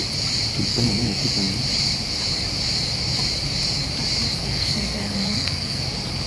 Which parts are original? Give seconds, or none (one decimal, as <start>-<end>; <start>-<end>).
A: 0.0-0.7; 1.3-4.4; 5.8-6.3